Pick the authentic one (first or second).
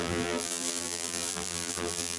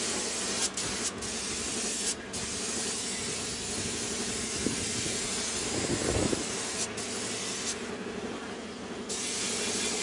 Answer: second